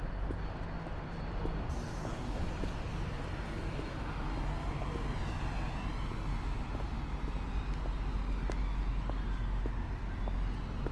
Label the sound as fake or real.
real